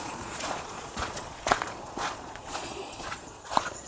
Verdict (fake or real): fake